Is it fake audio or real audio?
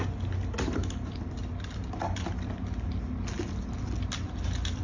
real